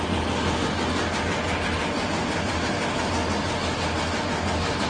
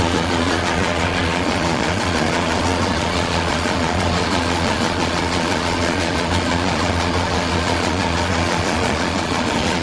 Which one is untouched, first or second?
first